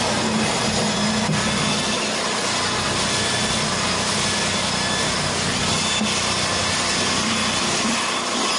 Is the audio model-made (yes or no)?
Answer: no